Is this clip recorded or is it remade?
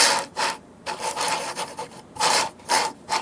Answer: remade